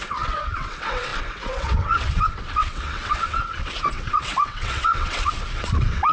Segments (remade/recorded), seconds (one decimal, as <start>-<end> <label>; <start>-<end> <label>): 0.0-6.1 remade